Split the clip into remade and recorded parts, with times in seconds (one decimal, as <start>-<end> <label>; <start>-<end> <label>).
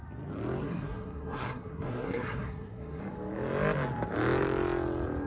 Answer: 0.0-0.6 recorded; 0.6-3.0 remade; 3.0-5.3 recorded